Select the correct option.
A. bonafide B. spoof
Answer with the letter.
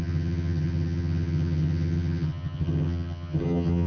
B